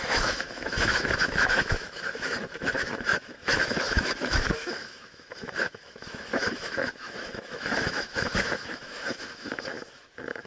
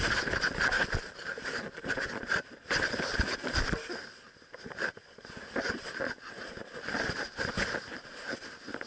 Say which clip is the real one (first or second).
second